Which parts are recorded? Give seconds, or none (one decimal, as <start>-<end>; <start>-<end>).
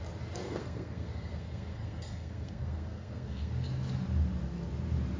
0.0-0.4; 3.5-5.2